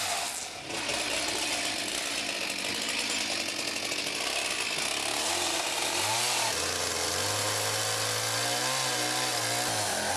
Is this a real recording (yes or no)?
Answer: yes